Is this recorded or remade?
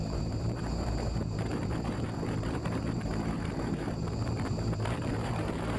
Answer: remade